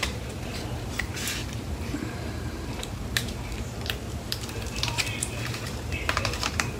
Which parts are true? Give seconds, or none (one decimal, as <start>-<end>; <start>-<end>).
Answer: none